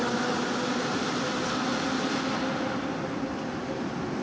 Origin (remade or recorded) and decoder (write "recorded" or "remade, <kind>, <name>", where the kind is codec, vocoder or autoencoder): recorded